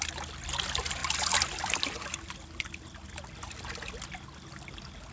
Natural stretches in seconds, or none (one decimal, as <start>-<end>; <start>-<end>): 0.0-5.1